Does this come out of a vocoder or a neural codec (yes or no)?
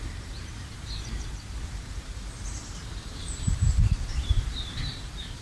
yes